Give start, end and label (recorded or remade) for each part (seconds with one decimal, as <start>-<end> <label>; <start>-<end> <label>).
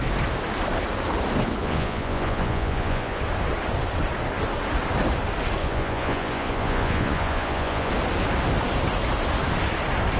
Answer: 0.0-1.6 recorded; 1.6-3.2 remade; 3.2-5.6 recorded; 5.6-7.9 remade; 7.9-10.2 recorded